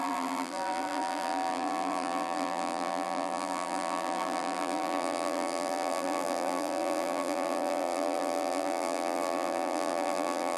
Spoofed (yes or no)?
yes